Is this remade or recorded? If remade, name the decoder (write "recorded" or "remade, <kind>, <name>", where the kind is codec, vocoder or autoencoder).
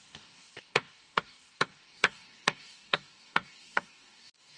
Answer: remade, codec, DAC